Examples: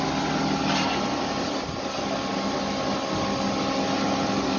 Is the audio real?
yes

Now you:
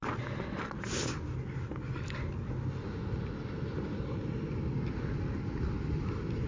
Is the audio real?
yes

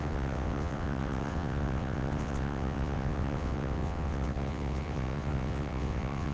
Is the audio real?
no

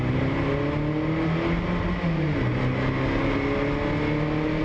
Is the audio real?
yes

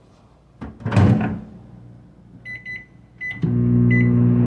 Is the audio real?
yes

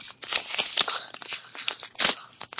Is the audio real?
yes